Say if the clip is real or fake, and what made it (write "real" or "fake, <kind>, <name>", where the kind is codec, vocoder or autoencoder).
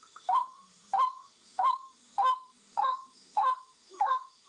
fake, autoencoder, DAC-VAE